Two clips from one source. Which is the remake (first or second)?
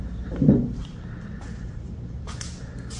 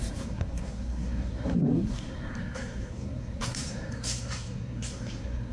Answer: second